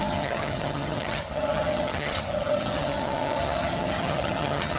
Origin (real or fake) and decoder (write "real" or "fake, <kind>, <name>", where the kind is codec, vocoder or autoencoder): fake, vocoder, HiFi-GAN